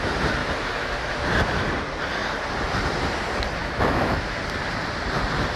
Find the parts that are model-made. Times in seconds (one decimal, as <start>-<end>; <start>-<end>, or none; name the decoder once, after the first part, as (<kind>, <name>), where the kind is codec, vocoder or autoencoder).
0.4-1.1 (autoencoder, DAC-VAE); 3.6-4.4